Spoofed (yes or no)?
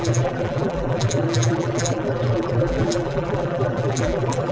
yes